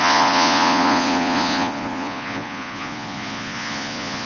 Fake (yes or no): yes